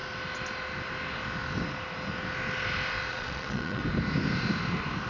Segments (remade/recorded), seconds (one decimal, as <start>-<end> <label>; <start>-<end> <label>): 0.0-3.1 recorded; 3.1-3.8 remade; 3.8-5.1 recorded